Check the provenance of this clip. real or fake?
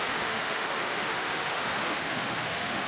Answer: fake